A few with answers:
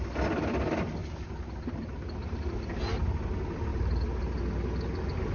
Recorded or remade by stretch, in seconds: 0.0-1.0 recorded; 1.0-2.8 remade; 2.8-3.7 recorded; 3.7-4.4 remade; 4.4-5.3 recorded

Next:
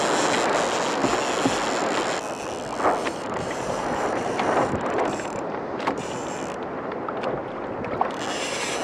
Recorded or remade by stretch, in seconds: 0.0-3.0 recorded; 3.0-6.4 remade; 6.4-8.8 recorded

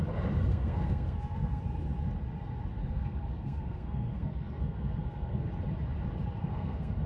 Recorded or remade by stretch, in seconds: 0.0-0.5 recorded; 0.5-1.6 remade; 1.6-2.8 recorded; 2.8-5.5 remade; 5.5-6.4 recorded; 6.4-7.1 remade

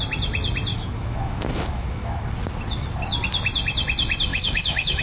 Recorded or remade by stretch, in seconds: 0.0-0.7 recorded; 0.7-2.3 remade; 2.3-4.3 recorded; 4.3-5.0 remade

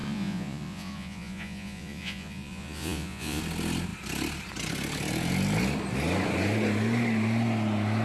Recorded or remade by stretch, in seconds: 0.0-3.4 remade; 3.4-8.0 recorded

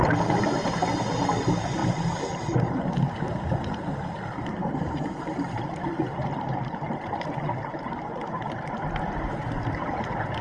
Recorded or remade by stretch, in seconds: 0.0-10.4 remade